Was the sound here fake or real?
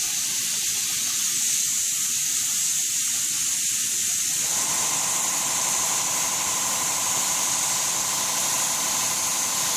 real